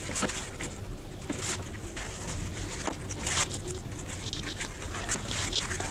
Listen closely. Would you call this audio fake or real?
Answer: real